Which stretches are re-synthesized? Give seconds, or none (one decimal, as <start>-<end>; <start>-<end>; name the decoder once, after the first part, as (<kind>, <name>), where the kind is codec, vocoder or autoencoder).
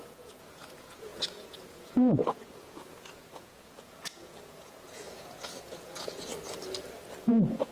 0.0-6.3 (vocoder, Vocos); 7.2-7.7